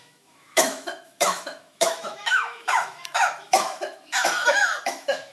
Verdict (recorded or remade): remade